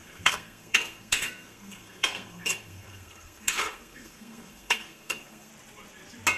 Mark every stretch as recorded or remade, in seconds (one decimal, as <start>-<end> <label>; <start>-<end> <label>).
0.0-5.5 remade; 5.5-6.4 recorded